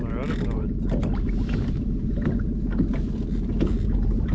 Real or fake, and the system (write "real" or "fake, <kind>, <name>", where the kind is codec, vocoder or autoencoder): real